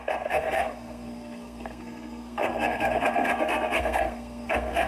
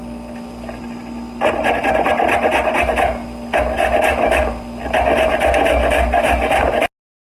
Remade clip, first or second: first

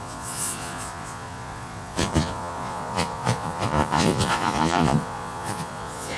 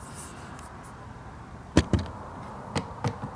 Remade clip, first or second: first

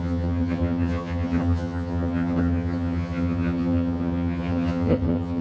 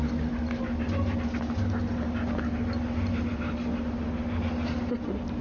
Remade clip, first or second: first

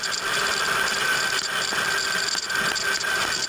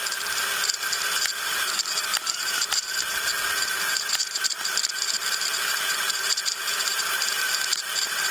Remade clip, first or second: second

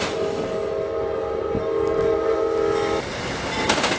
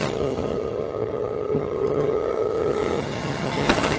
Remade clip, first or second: second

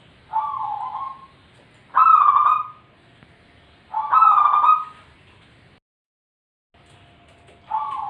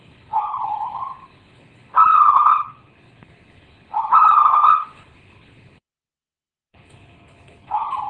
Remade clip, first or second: second